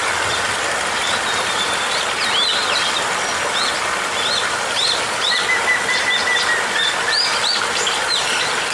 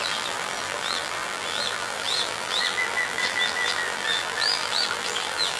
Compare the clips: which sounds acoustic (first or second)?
first